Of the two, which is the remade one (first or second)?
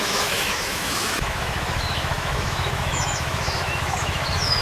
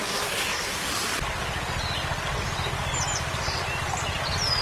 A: first